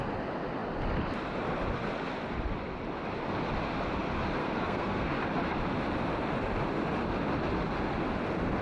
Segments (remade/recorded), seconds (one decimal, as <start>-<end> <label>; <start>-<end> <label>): 0.0-4.4 recorded; 4.4-5.1 remade; 5.1-8.6 recorded